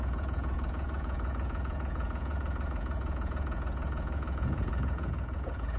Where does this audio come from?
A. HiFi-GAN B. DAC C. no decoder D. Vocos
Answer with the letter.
D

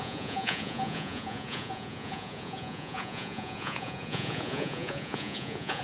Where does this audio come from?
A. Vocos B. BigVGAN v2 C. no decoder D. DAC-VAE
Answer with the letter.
A